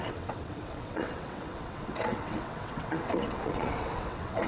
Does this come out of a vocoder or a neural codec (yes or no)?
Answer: yes